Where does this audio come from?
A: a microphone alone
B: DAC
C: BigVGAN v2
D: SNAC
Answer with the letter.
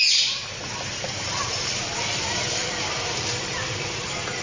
C